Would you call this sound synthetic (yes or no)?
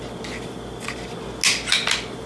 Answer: no